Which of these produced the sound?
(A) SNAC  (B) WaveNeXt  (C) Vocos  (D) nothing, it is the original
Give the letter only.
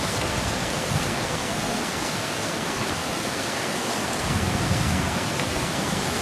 A